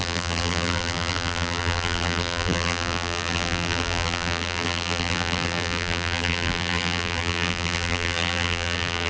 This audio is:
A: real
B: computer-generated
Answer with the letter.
B